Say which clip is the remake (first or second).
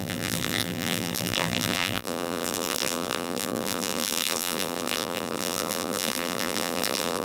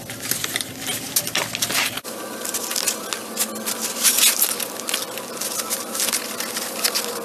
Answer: first